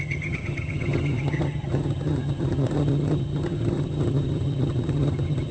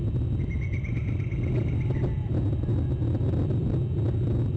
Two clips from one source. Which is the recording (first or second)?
second